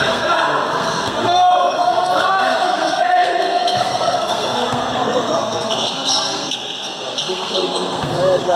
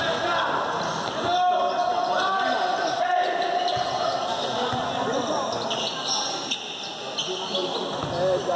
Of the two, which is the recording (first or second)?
second